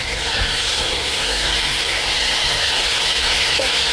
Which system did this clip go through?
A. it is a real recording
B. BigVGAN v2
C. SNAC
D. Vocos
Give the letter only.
C